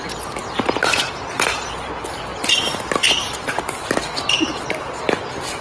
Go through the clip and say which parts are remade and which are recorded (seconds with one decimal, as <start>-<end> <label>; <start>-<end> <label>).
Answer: 0.0-5.6 recorded